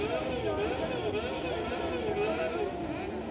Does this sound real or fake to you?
real